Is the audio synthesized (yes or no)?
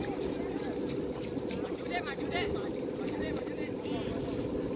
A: no